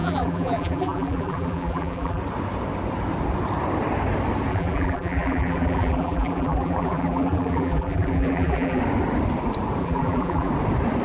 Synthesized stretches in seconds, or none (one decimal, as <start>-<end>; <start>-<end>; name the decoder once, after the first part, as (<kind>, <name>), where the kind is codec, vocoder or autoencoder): 0.0-2.2 (vocoder, BigVGAN v2); 4.5-8.8; 9.8-10.5